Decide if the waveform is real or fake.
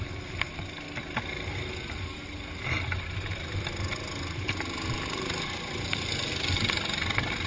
real